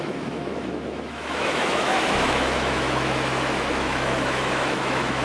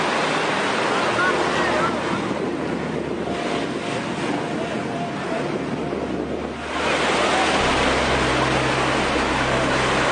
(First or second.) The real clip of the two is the second